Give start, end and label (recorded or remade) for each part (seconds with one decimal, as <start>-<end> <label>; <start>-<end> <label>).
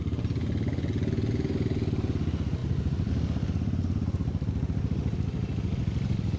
0.0-6.4 recorded